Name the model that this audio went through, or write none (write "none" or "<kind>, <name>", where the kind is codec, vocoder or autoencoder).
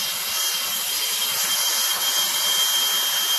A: none